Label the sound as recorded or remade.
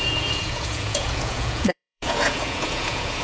remade